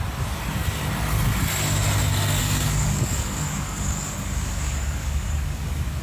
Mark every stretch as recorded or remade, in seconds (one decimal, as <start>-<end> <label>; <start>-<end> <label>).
0.0-2.4 recorded; 2.4-6.0 remade

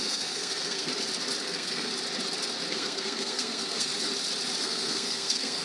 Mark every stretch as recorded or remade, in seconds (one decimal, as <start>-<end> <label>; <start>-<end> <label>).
0.0-0.9 remade; 0.9-1.4 recorded; 1.4-1.9 remade; 1.9-2.7 recorded; 2.7-3.9 remade; 3.9-4.6 recorded; 4.6-5.6 remade

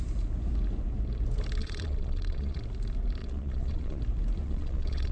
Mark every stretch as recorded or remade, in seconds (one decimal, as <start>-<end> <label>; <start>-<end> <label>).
0.0-1.6 recorded; 1.6-2.6 remade; 2.6-3.2 recorded; 3.2-4.0 remade; 4.0-4.4 recorded; 4.4-5.1 remade